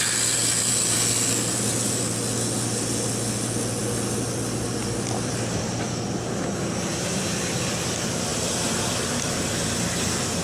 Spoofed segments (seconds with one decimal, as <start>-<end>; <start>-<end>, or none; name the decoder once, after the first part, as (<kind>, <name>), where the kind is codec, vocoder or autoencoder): 4.8-6.0 (vocoder, BigVGAN v2); 8.3-9.4